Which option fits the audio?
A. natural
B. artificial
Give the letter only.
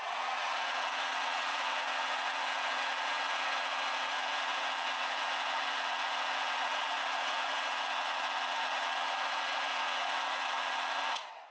B